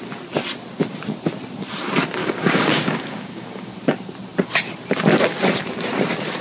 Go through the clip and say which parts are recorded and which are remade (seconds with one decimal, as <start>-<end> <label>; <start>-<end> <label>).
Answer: 0.0-2.2 recorded; 2.2-3.7 remade; 3.7-6.4 recorded